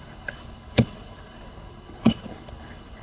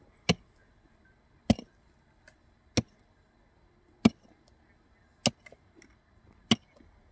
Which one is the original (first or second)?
second